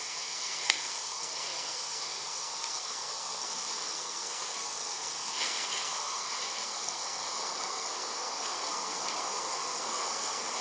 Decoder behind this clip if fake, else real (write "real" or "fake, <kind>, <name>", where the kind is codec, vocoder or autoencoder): fake, codec, SNAC